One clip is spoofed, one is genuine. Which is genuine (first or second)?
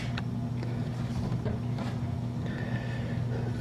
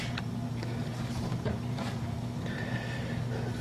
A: first